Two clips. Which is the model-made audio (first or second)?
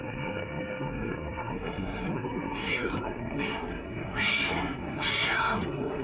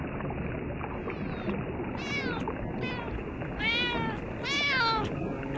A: first